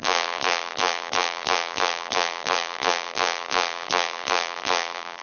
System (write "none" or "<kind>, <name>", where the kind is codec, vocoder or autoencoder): vocoder, BigVGAN v2